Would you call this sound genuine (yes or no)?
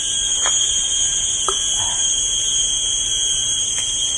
yes